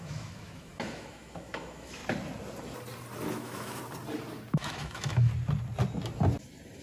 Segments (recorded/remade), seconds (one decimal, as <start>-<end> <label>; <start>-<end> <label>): 0.0-2.0 remade; 2.0-3.3 recorded; 3.3-3.8 remade; 3.8-4.5 recorded; 4.5-5.3 remade; 5.3-6.8 recorded